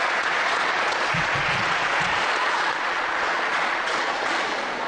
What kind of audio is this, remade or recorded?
remade